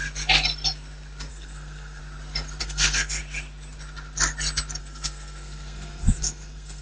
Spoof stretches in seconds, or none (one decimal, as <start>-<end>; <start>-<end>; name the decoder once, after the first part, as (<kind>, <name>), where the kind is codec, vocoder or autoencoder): 1.3-2.0 (codec, SNAC); 2.6-3.2; 4.8-6.8